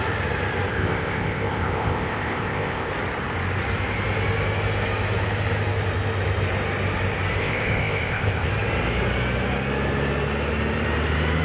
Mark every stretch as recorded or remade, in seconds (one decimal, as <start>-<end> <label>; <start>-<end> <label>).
0.0-0.7 recorded; 0.7-2.9 remade; 2.9-7.4 recorded; 7.4-8.5 remade; 8.5-11.4 recorded